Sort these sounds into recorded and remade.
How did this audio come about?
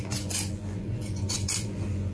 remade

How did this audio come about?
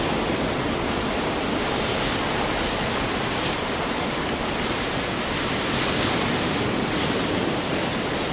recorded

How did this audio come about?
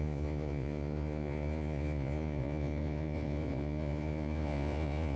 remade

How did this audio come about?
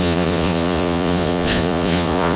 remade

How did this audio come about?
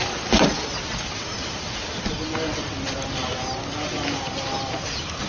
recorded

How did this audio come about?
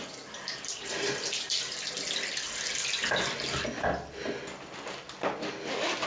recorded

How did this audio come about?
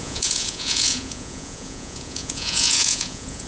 remade